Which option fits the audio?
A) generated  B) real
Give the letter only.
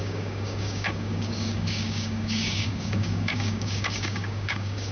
A